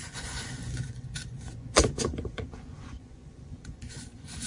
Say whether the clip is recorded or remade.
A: remade